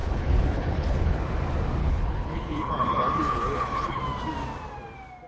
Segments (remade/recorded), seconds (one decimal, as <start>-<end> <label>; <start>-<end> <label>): 0.0-1.2 remade; 1.2-1.8 recorded; 1.8-4.0 remade; 4.0-5.3 recorded